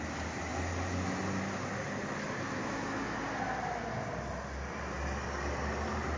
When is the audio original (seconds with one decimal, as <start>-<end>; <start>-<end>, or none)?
0.0-2.6; 3.3-6.2